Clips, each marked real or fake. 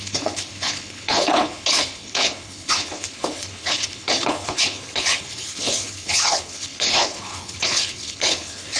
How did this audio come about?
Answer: fake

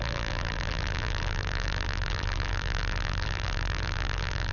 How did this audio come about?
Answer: fake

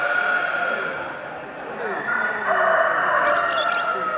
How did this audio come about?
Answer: real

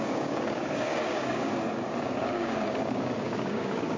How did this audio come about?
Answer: fake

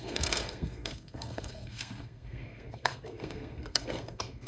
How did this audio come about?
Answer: fake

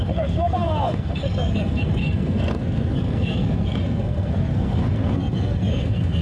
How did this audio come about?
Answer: fake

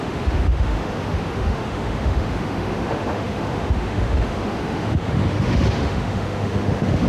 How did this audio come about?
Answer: fake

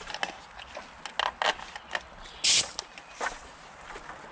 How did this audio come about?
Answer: real